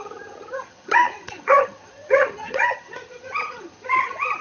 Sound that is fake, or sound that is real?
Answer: fake